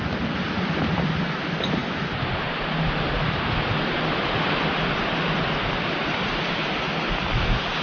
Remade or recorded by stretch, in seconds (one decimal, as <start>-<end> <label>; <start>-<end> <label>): 0.0-7.8 recorded